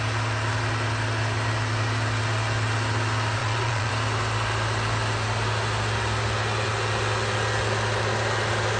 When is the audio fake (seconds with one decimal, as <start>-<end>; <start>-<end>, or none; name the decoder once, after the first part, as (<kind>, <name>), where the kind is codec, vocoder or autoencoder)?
3.4-3.9 (vocoder, Vocos)